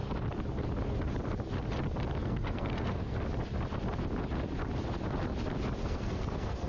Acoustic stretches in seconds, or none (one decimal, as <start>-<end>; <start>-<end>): 0.0-2.2; 3.2-5.8